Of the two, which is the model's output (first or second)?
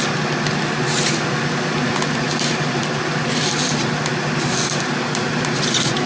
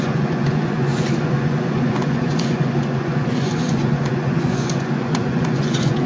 second